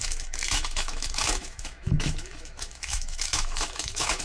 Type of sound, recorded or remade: remade